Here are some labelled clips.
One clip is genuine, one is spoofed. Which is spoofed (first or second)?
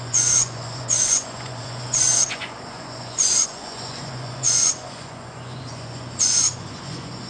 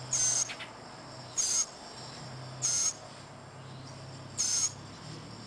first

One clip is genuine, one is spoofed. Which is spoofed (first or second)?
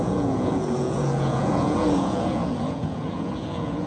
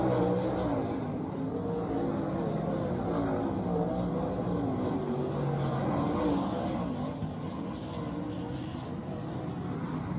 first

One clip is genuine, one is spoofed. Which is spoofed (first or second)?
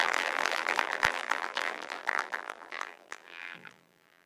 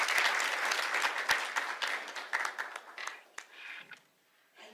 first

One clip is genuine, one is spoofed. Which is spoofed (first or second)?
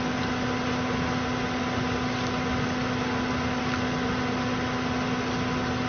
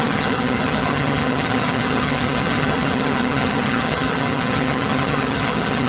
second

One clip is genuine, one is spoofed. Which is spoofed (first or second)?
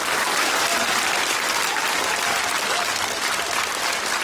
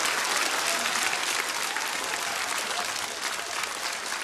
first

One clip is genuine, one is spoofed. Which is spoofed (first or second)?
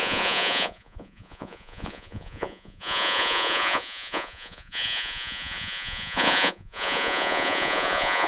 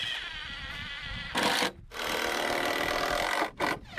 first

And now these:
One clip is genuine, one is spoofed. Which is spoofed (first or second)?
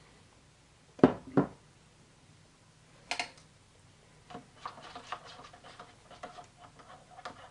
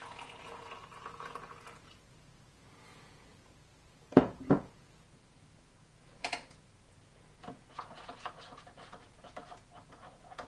second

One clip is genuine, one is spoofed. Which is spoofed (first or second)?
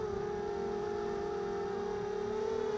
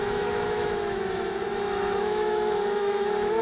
second